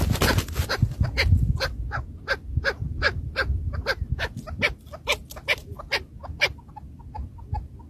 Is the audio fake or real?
real